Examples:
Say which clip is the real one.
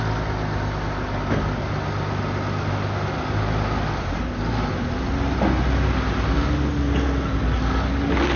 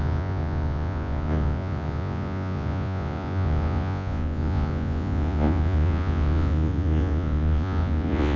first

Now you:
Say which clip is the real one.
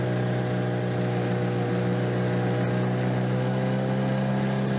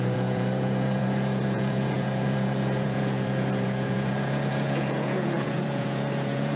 first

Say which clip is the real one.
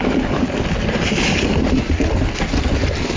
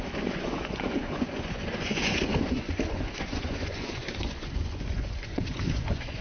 first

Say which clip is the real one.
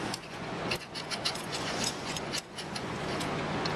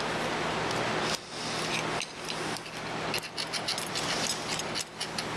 second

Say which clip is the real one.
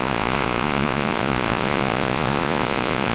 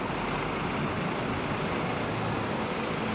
second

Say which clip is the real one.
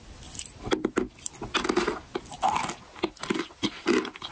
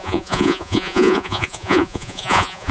first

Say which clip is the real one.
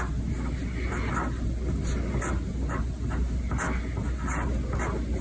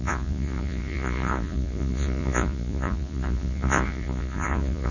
first